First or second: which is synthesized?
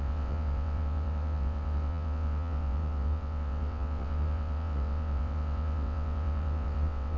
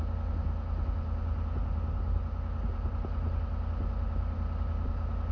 first